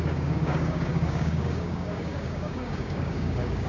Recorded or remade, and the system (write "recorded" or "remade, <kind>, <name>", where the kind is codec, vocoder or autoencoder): remade, codec, DAC